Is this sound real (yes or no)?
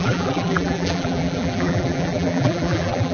no